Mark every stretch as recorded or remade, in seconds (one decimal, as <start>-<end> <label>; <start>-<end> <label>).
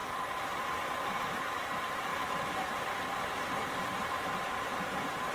0.0-2.1 remade; 2.1-3.8 recorded; 3.8-5.3 remade